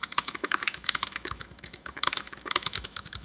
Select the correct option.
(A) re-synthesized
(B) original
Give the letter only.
A